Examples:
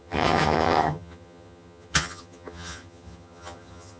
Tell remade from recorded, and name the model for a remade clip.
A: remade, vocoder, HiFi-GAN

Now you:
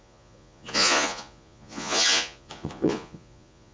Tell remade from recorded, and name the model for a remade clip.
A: remade, vocoder, Vocos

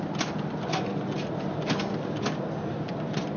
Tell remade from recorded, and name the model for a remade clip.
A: recorded